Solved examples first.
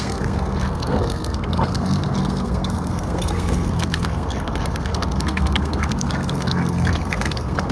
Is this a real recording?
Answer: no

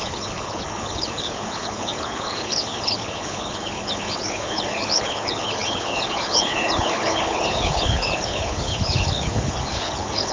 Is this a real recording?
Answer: no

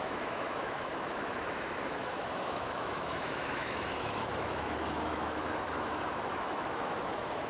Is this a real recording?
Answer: no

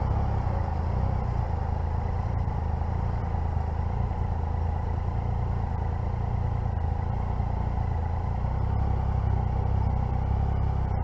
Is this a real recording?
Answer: yes